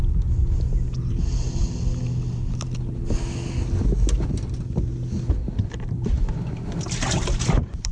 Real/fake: real